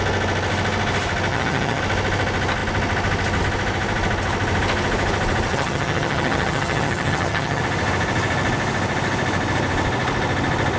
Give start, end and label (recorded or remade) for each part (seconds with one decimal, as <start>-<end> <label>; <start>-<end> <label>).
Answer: 0.0-1.3 recorded; 1.3-1.8 remade; 1.8-5.5 recorded; 5.5-7.6 remade; 7.6-10.8 recorded